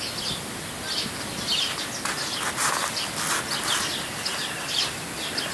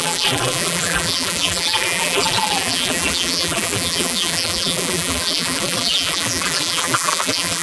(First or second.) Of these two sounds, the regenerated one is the second